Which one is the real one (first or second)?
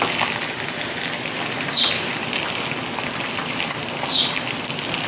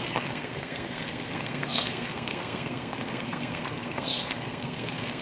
first